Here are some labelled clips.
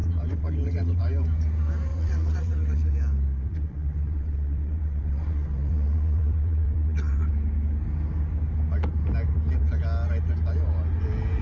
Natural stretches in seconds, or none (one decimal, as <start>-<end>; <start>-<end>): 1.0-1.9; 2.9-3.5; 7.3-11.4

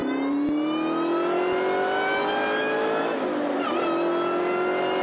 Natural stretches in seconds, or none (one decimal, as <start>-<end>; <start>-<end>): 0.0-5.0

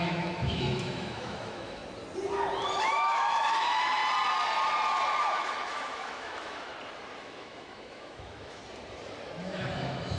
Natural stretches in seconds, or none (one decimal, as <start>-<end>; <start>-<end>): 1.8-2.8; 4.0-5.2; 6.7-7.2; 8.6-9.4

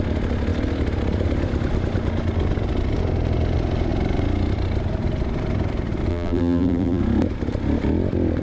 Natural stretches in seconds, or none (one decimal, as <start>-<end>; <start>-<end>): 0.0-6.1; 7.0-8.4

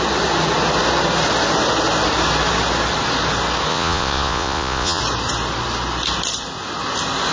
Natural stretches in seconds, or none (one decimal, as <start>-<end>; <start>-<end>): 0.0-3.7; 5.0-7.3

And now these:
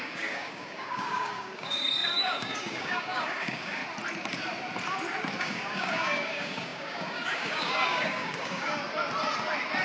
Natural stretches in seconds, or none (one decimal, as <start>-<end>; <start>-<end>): 3.8-5.4; 8.8-9.8

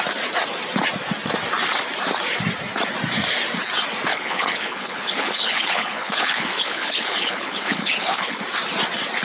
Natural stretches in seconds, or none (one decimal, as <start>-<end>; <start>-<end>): 0.0-4.1; 8.4-9.2